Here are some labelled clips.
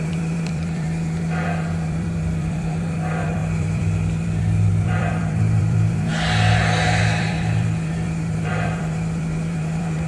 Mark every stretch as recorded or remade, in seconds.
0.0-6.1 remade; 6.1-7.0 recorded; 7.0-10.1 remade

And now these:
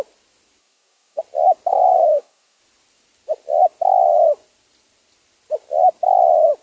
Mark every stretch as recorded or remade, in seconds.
0.0-0.6 recorded; 0.6-1.2 remade; 1.2-1.7 recorded; 1.7-2.6 remade; 2.6-6.6 recorded

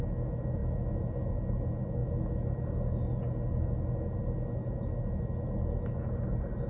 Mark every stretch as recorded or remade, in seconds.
0.0-6.7 recorded

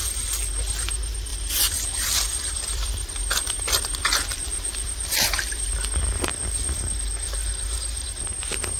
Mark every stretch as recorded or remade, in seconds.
0.0-1.3 recorded; 1.3-5.7 remade; 5.7-8.8 recorded

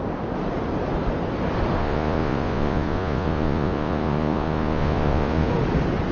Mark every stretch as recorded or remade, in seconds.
0.0-1.8 recorded; 1.8-5.5 remade; 5.5-6.1 recorded

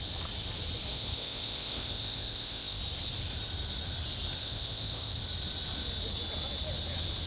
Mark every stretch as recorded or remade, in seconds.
0.0-0.9 recorded; 0.9-2.8 remade; 2.8-4.4 recorded; 4.4-5.2 remade; 5.2-7.3 recorded

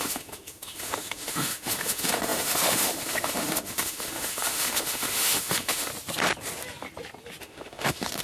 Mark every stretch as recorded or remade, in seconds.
0.0-5.9 remade; 5.9-7.4 recorded; 7.4-8.2 remade

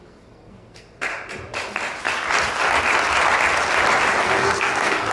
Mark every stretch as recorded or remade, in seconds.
0.0-1.1 remade; 1.1-4.2 recorded; 4.2-5.1 remade